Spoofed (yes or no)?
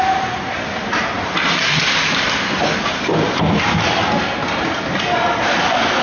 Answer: no